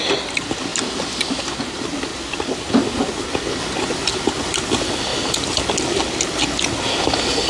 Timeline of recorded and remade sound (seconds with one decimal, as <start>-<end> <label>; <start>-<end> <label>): 0.0-7.5 recorded

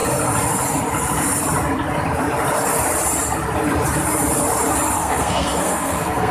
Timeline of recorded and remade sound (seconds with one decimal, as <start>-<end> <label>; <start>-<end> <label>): 0.0-5.0 recorded; 5.0-6.3 remade